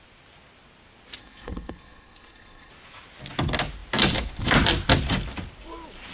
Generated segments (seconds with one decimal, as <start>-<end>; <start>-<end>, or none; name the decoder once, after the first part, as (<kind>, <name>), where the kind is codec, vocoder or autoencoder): 1.2-2.7 (codec, SNAC)